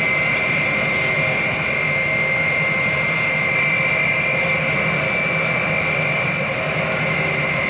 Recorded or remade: recorded